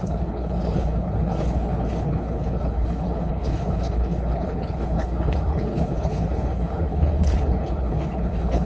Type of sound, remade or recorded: remade